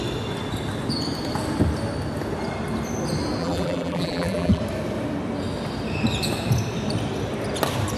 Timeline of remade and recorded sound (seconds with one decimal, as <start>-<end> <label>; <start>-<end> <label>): 0.0-3.4 recorded; 3.4-4.6 remade; 4.6-8.0 recorded